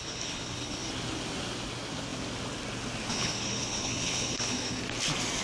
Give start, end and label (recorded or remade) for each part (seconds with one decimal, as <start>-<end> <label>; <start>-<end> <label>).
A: 0.0-0.9 remade; 0.9-3.1 recorded; 3.1-4.8 remade; 4.8-5.4 recorded

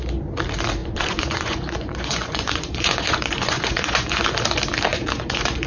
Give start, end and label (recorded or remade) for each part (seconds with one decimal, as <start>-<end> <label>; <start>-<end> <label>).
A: 0.0-0.8 recorded; 0.8-4.2 remade; 4.2-4.9 recorded; 4.9-5.7 remade

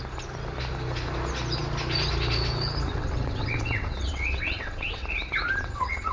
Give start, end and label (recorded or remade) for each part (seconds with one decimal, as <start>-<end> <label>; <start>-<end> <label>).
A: 0.0-2.9 recorded; 2.9-5.0 remade; 5.0-5.6 recorded; 5.6-6.1 remade

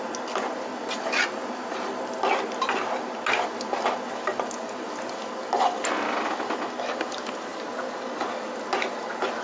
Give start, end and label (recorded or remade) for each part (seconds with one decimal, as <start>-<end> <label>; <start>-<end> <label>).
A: 0.0-9.4 recorded

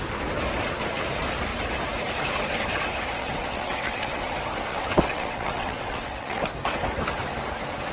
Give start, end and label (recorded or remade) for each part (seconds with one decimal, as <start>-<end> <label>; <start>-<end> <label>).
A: 0.0-3.2 recorded; 3.2-4.2 remade; 4.2-4.7 recorded; 4.7-6.5 remade; 6.5-7.9 recorded